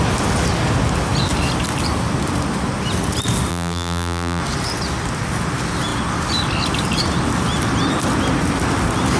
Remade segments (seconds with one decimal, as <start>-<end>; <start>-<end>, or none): 3.5-4.4